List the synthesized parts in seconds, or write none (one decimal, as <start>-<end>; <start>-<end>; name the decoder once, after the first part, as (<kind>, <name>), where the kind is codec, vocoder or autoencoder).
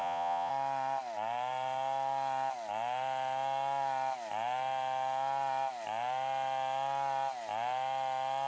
0.0-0.5 (vocoder, Vocos)